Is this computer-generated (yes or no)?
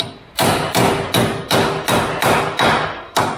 no